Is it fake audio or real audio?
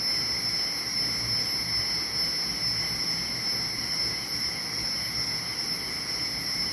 real